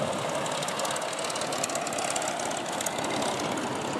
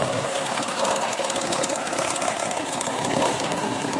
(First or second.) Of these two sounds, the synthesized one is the second